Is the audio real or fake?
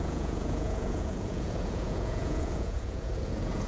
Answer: fake